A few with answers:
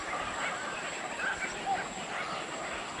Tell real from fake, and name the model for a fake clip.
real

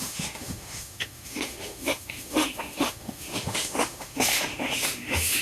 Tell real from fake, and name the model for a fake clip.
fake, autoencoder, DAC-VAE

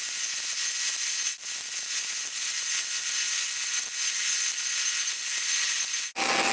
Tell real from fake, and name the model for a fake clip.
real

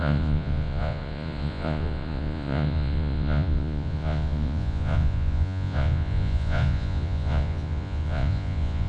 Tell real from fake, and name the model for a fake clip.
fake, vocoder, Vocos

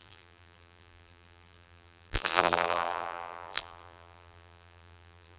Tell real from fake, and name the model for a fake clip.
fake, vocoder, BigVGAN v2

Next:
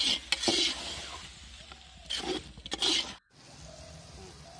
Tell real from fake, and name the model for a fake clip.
real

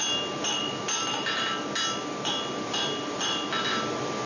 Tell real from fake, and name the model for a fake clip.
real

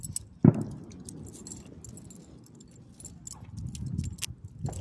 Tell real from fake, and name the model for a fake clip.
real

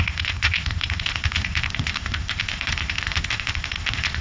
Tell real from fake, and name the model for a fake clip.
fake, codec, ZipCodec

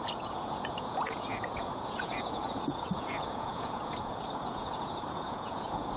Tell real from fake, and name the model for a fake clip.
fake, vocoder, Vocos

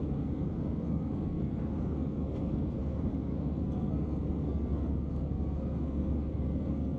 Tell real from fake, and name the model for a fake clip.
fake, codec, SNAC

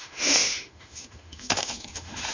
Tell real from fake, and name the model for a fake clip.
fake, autoencoder, DAC-VAE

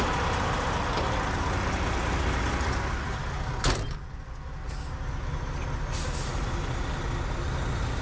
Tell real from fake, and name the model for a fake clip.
real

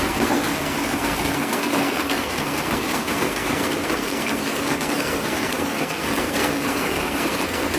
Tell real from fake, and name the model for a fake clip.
fake, codec, SNAC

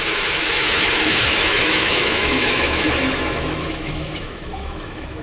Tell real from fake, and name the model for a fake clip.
fake, autoencoder, DAC-VAE